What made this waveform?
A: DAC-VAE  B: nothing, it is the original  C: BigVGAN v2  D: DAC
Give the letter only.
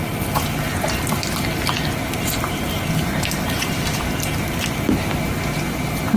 B